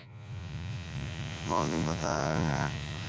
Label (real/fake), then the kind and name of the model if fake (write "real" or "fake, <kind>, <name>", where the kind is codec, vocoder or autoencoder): fake, vocoder, Vocos